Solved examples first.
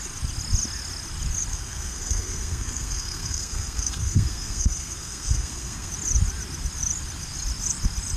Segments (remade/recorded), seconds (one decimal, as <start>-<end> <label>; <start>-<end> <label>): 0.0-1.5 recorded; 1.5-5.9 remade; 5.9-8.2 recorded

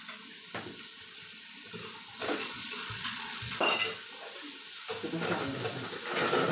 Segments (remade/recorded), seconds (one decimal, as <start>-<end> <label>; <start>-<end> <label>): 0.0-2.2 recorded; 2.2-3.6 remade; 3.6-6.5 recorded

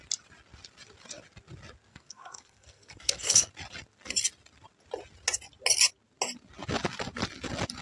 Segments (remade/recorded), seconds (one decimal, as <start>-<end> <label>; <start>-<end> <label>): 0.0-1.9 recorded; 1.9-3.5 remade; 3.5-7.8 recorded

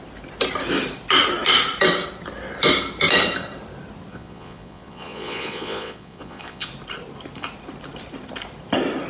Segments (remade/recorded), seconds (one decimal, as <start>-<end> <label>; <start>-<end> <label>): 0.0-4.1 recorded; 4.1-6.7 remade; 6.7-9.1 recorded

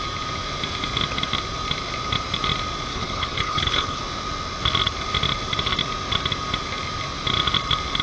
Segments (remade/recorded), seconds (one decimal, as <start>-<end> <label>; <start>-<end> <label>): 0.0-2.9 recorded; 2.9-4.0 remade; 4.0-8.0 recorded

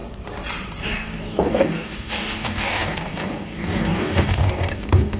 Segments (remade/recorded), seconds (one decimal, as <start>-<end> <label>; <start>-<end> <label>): 0.0-0.8 recorded; 0.8-5.2 remade

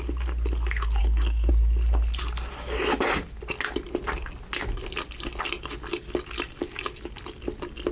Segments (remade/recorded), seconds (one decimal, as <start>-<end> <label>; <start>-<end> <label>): 0.0-1.0 recorded; 1.0-1.5 remade; 1.5-7.9 recorded

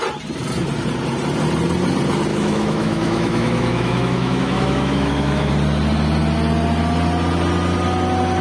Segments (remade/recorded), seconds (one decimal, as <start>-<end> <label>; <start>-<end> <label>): 0.0-2.3 recorded; 2.3-5.5 remade; 5.5-8.4 recorded